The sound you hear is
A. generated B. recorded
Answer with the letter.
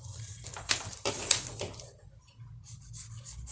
A